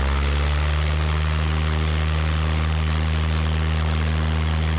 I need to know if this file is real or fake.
real